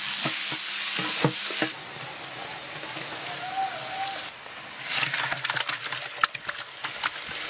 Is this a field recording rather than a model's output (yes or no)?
yes